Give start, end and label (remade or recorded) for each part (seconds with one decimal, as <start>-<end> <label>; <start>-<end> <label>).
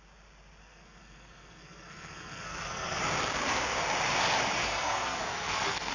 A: 0.0-0.6 recorded; 0.6-3.0 remade; 3.0-4.6 recorded; 4.6-5.9 remade